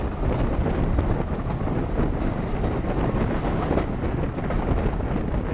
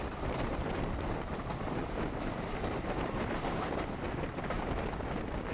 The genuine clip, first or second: first